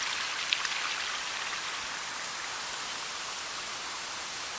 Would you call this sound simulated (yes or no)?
no